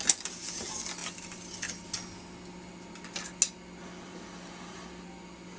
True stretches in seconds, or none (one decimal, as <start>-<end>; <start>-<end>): 0.0-5.6